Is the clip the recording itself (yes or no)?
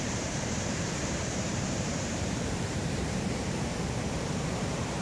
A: no